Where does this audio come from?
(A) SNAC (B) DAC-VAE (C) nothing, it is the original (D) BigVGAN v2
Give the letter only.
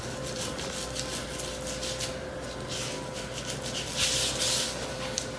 C